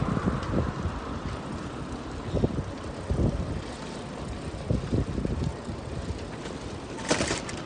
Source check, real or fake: real